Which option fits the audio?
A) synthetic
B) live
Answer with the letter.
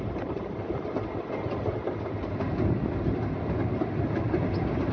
B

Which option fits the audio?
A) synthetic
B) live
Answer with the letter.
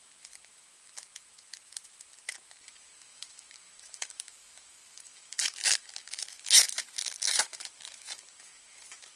A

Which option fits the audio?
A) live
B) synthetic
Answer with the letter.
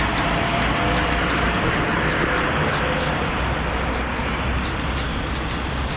A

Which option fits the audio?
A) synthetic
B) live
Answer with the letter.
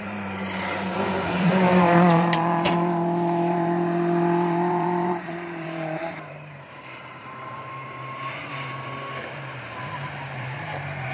A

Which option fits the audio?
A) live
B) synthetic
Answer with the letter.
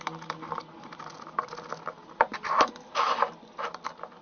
A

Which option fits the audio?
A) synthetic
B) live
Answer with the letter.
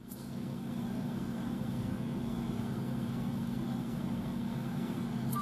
A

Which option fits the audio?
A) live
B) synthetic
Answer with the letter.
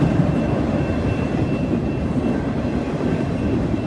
A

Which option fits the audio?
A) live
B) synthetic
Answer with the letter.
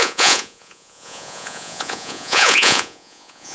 B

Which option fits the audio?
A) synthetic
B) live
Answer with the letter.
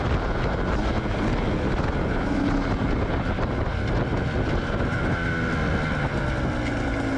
B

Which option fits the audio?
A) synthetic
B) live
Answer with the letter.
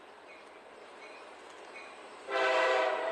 B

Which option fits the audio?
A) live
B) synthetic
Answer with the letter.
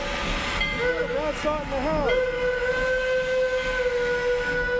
A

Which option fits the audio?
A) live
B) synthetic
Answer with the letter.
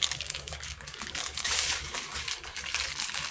B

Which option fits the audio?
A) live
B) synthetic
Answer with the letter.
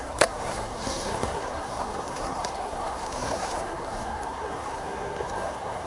B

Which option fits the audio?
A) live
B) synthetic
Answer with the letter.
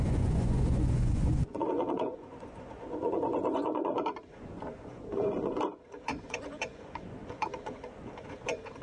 B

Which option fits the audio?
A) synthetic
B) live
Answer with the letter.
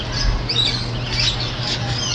B